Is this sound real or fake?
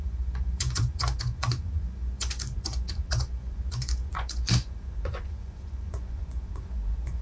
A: fake